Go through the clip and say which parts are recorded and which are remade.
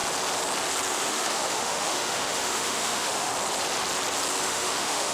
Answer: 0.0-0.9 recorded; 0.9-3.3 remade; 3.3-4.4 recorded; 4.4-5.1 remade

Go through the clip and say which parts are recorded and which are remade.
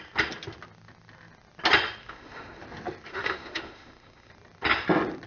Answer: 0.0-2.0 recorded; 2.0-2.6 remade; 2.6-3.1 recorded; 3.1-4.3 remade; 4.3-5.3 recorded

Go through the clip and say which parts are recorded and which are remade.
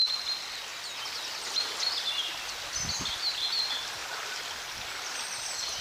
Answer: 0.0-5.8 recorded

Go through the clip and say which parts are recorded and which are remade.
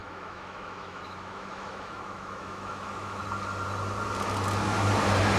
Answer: 0.0-3.2 remade; 3.2-5.4 recorded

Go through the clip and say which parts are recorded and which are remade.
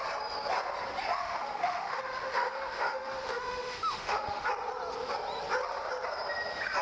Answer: 0.0-1.2 recorded; 1.2-4.5 remade; 4.5-6.8 recorded